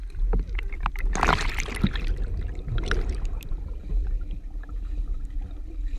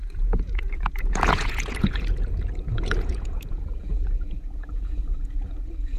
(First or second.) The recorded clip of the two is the first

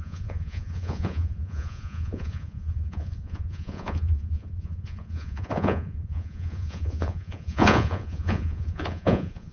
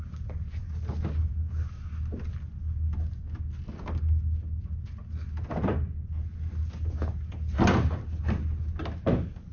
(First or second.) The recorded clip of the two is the second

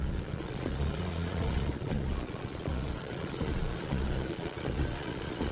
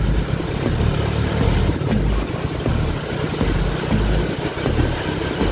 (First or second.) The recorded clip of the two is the second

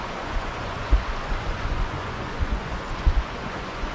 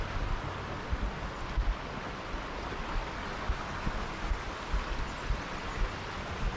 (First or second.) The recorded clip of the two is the second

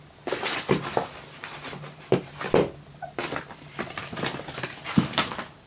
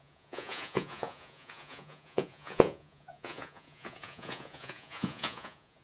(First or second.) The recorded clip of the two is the first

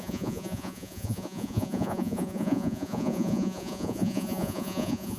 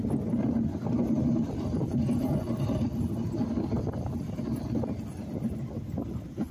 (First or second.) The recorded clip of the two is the second